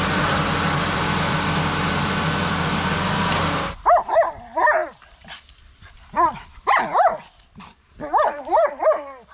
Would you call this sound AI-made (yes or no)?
no